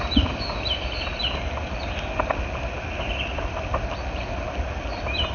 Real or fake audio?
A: real